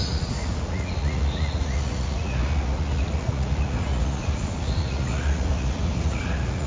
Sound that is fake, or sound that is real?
fake